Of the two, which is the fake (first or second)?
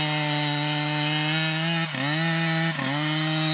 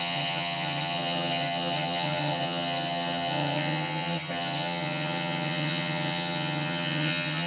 second